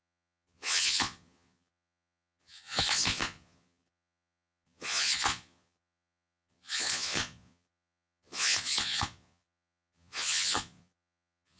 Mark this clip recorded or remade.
remade